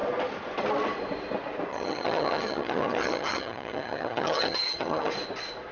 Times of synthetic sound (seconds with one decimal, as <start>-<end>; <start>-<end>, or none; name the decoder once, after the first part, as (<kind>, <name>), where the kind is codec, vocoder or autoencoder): 1.7-5.1 (vocoder, HiFi-GAN)